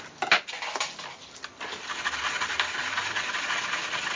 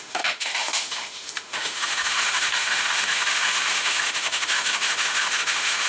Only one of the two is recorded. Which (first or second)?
first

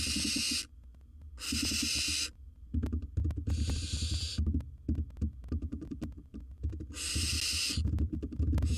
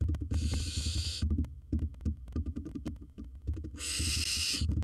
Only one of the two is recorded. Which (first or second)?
first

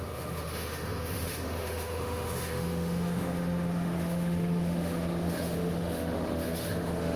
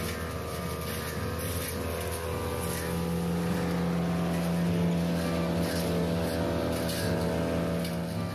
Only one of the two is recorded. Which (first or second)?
second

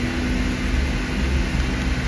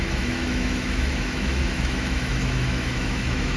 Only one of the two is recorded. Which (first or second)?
first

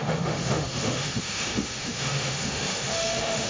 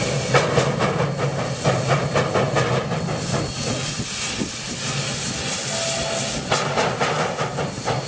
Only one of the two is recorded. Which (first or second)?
second